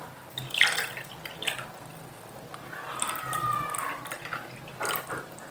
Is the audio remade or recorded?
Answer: recorded